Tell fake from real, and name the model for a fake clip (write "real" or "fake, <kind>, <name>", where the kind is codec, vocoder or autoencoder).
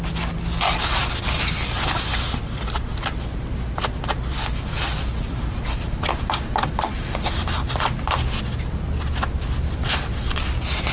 real